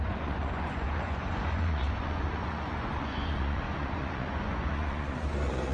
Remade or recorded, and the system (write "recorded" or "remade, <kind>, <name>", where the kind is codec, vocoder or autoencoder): remade, vocoder, Vocos